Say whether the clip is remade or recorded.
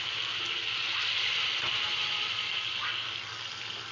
recorded